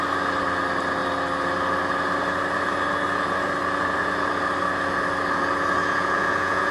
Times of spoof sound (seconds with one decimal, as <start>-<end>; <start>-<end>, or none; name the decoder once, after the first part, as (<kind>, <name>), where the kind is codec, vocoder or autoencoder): 5.8-6.7 (vocoder, Vocos)